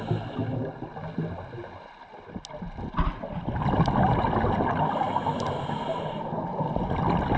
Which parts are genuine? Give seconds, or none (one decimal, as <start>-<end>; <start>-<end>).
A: 0.0-7.4